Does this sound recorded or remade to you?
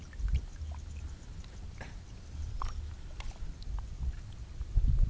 recorded